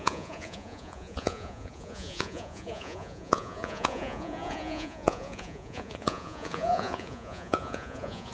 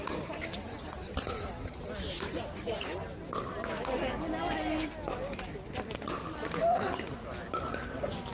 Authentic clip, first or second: second